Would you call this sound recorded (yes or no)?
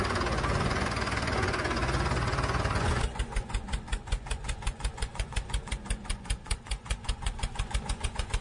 no